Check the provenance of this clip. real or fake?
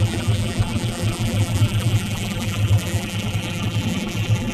fake